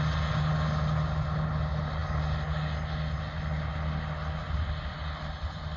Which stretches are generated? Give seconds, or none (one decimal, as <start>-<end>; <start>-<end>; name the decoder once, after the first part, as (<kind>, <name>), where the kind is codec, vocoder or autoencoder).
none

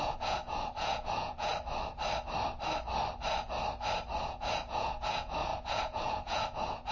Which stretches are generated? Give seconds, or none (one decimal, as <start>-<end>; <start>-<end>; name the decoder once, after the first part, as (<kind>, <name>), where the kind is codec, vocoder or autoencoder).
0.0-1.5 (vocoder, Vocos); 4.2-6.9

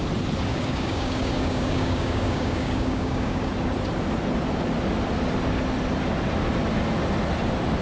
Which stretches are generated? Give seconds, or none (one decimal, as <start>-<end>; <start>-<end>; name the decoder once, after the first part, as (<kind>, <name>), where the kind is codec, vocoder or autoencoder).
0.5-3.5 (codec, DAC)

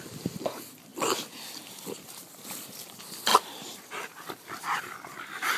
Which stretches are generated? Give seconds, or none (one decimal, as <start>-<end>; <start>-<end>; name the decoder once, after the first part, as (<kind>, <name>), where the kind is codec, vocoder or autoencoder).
3.3-4.8 (vocoder, BigVGAN v2)

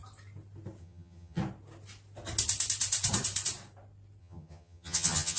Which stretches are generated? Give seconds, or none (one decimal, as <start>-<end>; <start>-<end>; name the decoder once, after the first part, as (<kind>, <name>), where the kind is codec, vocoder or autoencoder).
0.8-1.4 (vocoder, HiFi-GAN); 4.2-5.4

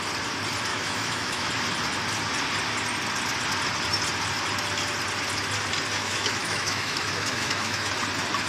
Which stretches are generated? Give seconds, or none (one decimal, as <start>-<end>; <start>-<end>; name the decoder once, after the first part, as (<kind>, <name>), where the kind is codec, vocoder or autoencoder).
0.7-1.5 (autoencoder, DAC-VAE); 6.0-7.9

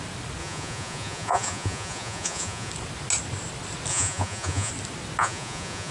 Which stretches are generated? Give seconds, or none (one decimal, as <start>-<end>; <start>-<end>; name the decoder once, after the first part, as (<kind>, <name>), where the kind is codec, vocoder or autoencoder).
0.4-2.7 (vocoder, Vocos); 3.9-4.7; 5.2-5.9

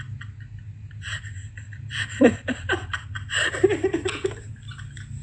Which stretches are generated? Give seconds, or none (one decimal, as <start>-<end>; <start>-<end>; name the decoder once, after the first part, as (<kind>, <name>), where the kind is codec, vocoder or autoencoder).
1.4-4.5 (vocoder, BigVGAN v2)